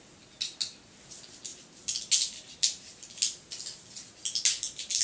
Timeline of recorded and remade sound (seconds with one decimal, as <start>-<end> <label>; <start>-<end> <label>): 0.0-5.0 recorded